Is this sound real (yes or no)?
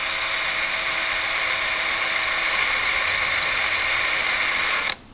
no